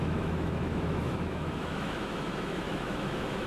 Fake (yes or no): yes